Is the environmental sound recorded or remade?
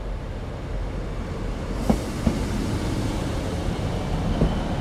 recorded